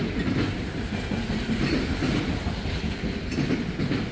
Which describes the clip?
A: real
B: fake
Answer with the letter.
A